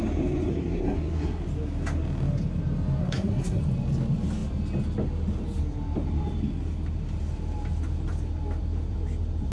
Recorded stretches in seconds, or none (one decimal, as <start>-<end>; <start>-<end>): 0.0-0.5; 1.4-3.0; 3.6-9.5